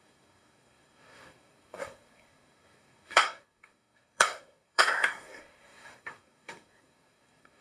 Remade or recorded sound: remade